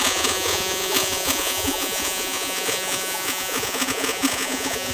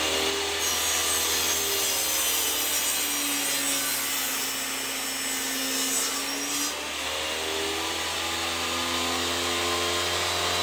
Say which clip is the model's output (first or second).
first